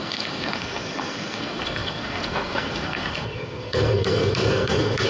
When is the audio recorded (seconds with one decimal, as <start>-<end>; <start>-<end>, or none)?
none